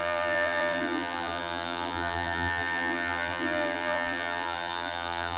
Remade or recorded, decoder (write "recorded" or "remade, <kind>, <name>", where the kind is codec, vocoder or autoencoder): remade, vocoder, BigVGAN v2